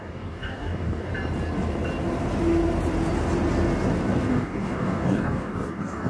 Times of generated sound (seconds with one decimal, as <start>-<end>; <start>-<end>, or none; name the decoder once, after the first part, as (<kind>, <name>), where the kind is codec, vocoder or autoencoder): 0.0-1.1 (codec, DAC); 4.3-6.1